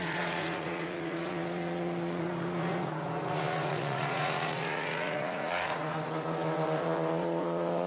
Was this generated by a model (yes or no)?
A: yes